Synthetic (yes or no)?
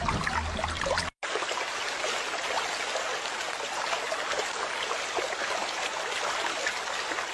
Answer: no